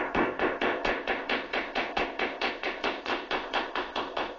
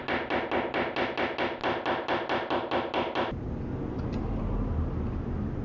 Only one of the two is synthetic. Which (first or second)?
first